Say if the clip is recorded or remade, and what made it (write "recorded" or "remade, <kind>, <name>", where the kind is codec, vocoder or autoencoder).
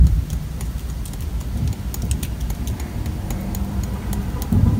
recorded